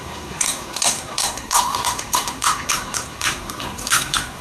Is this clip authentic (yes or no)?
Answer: no